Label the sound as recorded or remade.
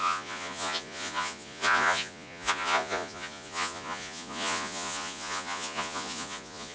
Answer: remade